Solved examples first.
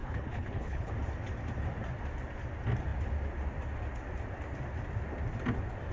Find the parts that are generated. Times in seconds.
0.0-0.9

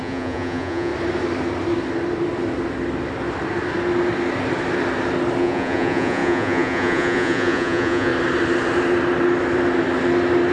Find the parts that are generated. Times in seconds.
0.0-0.9; 5.4-8.1

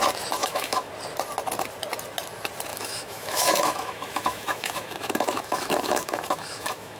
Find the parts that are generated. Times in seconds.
0.4-0.9; 2.7-7.0

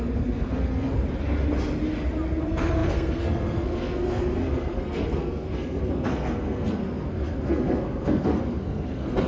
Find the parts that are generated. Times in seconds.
0.0-1.0; 2.4-9.3

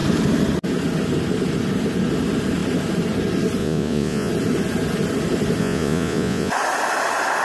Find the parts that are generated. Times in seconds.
3.6-4.3; 5.6-6.5

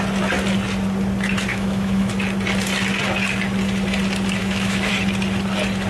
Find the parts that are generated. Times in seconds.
1.5-2.1; 4.4-4.9

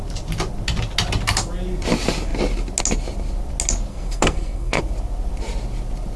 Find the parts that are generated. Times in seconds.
3.9-4.8

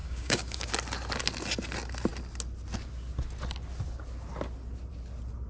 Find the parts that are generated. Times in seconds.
0.0-0.7